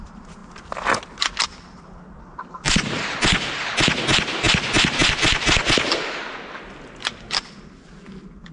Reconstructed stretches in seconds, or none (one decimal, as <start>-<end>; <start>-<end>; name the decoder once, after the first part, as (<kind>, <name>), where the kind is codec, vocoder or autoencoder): none